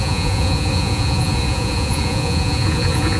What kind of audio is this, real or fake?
fake